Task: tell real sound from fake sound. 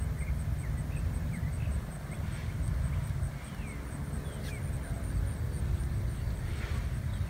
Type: real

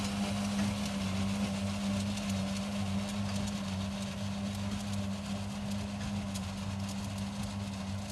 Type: real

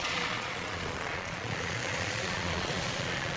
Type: fake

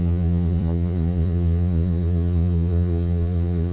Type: fake